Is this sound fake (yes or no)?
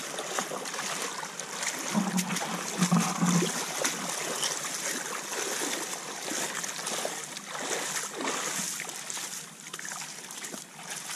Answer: no